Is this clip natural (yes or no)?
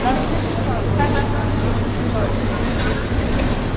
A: yes